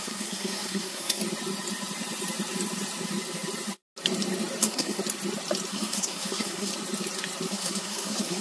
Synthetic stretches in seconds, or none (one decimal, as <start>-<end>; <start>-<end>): 0.0-1.2; 4.6-5.0; 5.7-6.7; 7.5-8.4